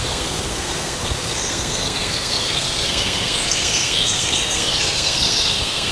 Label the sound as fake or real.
fake